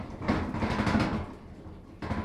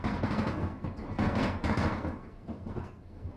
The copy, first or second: second